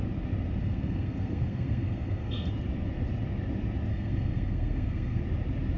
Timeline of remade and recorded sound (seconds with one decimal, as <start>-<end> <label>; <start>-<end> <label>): 0.0-0.6 recorded; 0.6-2.5 remade; 2.5-3.9 recorded; 3.9-5.2 remade; 5.2-5.8 recorded